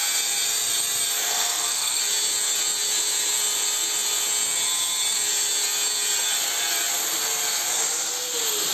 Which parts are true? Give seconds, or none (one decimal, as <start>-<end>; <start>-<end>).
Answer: 0.0-1.3; 2.0-8.7